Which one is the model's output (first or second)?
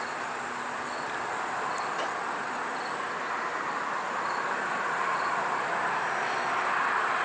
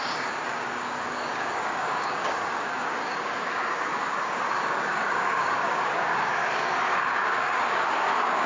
second